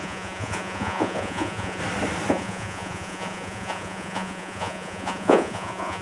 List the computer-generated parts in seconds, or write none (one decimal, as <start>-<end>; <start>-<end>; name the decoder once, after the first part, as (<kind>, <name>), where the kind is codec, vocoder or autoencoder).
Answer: 0.0-1.8 (vocoder, Vocos); 2.3-6.0